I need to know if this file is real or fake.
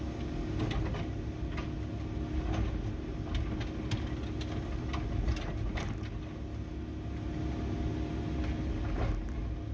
real